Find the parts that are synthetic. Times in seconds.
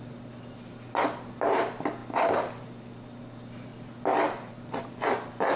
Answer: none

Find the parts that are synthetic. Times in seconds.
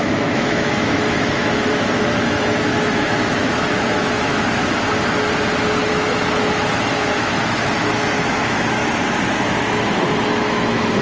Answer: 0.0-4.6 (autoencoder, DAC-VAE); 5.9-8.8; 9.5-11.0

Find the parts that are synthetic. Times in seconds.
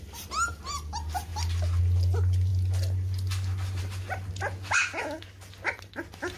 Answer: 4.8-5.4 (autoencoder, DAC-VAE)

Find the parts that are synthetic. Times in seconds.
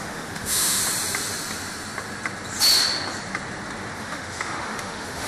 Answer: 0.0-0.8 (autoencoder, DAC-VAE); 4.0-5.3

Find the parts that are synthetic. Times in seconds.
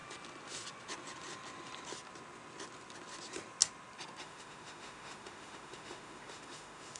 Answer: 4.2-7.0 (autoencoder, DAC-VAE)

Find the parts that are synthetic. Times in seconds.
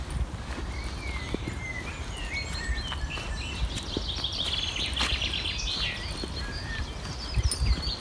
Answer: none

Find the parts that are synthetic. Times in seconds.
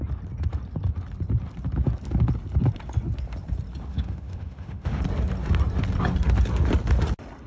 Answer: 3.9-5.0 (autoencoder, DAC-VAE)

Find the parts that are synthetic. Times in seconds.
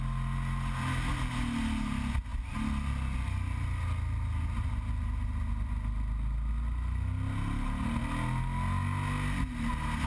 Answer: none